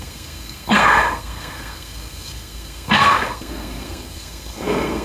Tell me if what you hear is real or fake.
fake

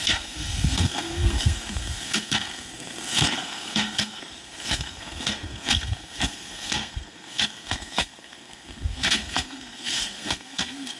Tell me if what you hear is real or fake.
fake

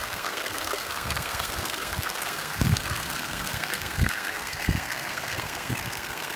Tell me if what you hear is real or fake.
fake